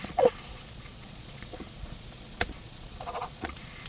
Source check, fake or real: fake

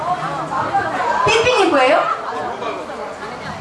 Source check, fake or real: real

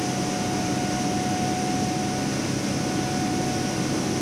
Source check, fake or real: real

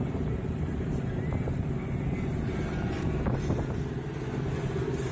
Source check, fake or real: real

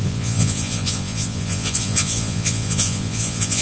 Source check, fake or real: fake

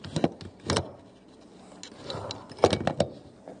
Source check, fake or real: real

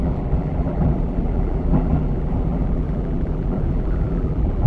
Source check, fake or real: fake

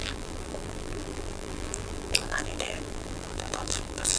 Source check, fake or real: fake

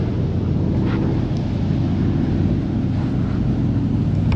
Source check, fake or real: real